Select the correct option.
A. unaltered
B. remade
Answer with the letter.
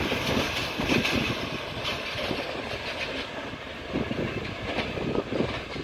A